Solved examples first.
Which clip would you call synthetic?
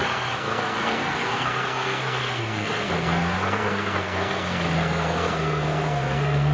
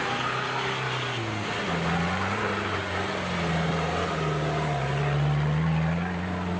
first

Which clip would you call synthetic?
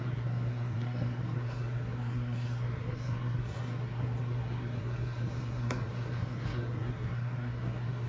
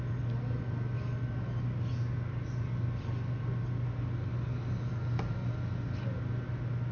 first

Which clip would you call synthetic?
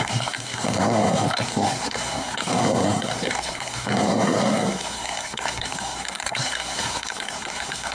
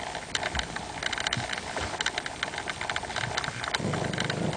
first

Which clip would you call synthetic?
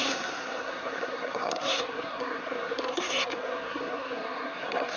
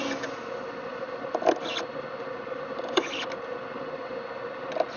first